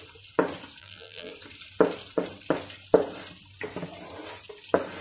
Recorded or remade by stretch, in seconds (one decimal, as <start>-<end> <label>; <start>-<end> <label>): 0.0-0.8 recorded; 0.8-1.3 remade; 1.3-5.0 recorded